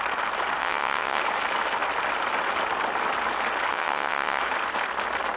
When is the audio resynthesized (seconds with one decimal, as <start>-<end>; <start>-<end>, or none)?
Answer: 0.6-1.2; 3.7-4.4